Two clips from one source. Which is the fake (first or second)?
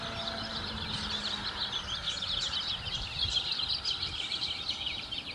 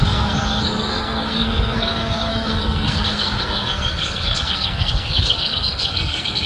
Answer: second